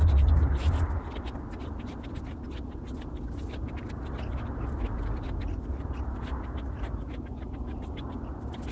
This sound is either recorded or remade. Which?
recorded